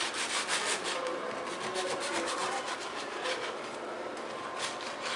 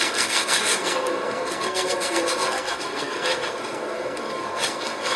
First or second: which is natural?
first